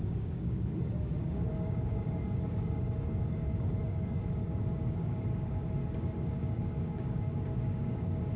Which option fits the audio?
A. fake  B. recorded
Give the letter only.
A